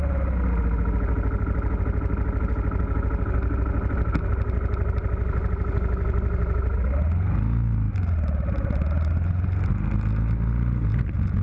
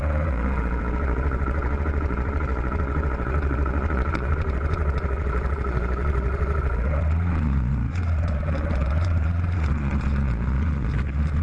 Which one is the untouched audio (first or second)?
first